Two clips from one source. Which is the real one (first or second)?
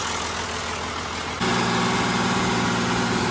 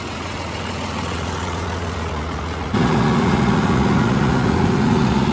first